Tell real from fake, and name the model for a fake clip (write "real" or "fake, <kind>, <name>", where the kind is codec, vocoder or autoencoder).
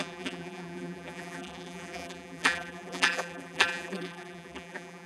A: fake, vocoder, BigVGAN v2